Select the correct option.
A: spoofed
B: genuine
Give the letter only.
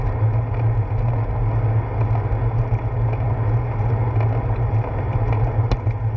B